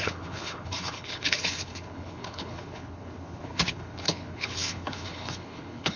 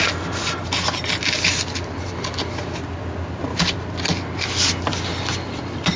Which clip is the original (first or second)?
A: second